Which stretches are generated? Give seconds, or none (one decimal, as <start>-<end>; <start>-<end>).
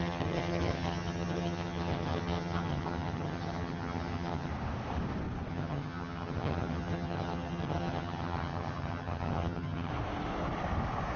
0.0-4.5; 5.5-9.9